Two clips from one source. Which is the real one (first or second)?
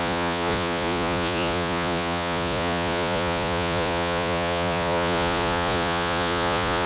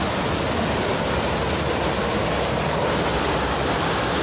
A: second